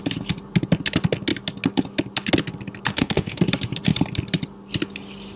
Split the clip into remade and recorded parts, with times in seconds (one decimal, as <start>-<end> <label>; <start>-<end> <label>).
0.0-2.9 recorded; 2.9-3.4 remade; 3.4-5.4 recorded